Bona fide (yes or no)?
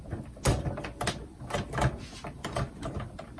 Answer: yes